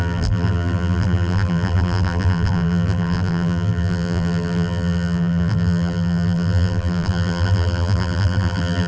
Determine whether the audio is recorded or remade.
remade